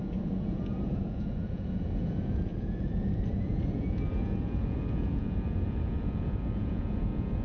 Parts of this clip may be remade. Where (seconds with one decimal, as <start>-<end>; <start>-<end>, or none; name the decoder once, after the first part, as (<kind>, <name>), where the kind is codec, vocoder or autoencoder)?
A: 0.0-7.4 (vocoder, Vocos)